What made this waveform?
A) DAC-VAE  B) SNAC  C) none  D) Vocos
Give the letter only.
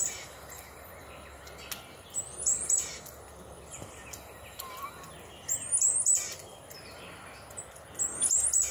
C